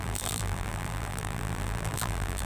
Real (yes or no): no